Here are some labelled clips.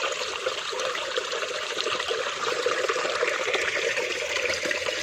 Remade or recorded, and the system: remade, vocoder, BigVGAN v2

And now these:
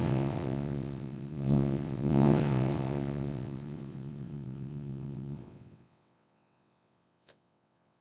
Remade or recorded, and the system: remade, vocoder, WaveNeXt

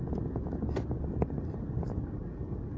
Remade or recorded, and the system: recorded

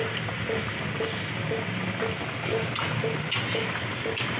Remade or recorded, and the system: recorded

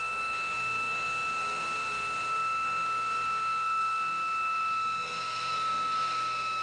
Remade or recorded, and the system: remade, codec, SNAC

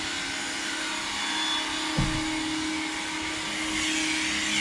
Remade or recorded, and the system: recorded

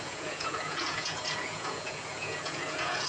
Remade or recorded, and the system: remade, vocoder, Vocos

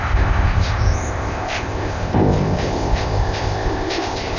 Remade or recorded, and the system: remade, codec, ZipCodec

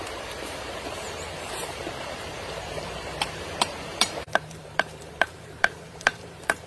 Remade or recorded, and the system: remade, vocoder, BigVGAN v2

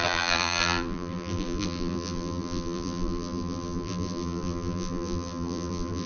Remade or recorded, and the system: remade, vocoder, BigVGAN v2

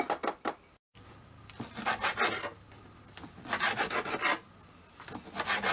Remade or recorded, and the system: recorded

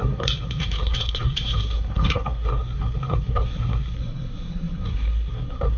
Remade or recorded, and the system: remade, codec, SNAC